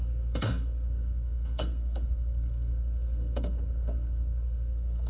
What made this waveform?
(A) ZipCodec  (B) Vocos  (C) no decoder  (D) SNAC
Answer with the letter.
D